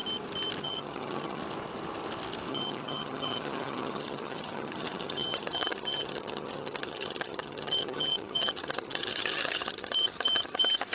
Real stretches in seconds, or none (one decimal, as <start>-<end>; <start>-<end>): 0.0-0.6; 1.4-2.5